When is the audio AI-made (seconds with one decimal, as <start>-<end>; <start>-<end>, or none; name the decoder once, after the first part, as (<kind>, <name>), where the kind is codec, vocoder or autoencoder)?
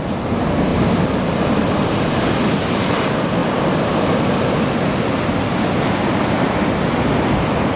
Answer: 0.7-2.2 (vocoder, BigVGAN v2); 3.4-4.0